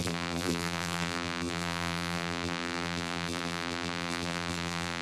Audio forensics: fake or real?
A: fake